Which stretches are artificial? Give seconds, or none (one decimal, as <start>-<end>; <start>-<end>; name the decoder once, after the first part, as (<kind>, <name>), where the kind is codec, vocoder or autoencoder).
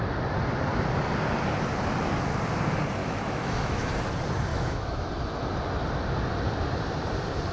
3.0-3.9 (autoencoder, DAC-VAE); 4.5-5.1